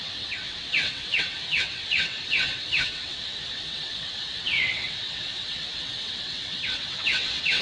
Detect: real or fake fake